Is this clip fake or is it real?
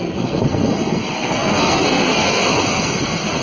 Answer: fake